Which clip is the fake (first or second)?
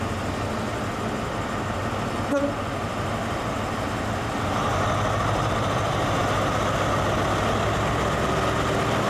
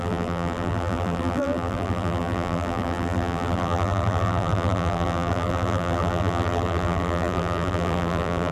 second